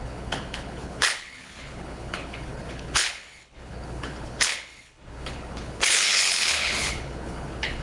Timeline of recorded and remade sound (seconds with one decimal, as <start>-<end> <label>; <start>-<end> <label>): 0.0-7.8 remade